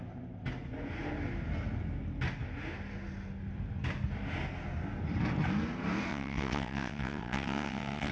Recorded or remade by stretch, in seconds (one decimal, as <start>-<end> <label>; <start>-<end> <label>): 0.0-6.1 recorded; 6.1-8.1 remade